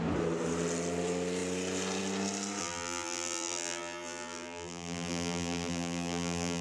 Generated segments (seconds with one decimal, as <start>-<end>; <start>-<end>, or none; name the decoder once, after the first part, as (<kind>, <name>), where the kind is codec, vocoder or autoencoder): 2.6-6.6 (vocoder, BigVGAN v2)